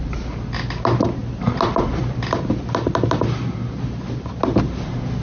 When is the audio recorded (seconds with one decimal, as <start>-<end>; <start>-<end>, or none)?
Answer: 0.0-5.2

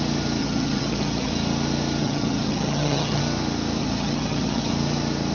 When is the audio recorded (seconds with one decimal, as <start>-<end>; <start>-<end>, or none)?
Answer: 0.0-0.4; 1.3-2.0; 3.2-3.8; 4.7-5.3